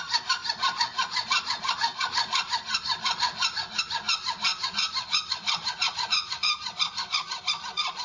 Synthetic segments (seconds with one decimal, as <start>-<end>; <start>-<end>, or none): none